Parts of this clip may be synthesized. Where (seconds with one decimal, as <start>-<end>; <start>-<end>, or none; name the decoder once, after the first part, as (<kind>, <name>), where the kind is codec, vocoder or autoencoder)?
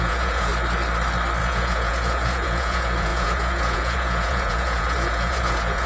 0.0-0.5 (vocoder, Vocos); 1.4-5.9